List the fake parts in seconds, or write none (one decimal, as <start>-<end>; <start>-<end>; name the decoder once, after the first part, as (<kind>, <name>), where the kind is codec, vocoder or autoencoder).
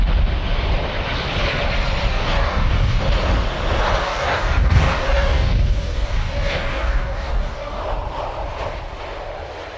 2.1-3.0 (codec, DAC); 4.0-7.8